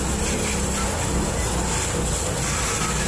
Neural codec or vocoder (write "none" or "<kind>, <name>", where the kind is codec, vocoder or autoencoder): none